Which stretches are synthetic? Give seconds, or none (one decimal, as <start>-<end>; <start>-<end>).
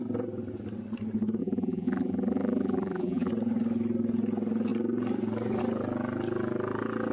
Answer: 1.4-3.3